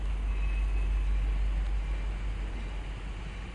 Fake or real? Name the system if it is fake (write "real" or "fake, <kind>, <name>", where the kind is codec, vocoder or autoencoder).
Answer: real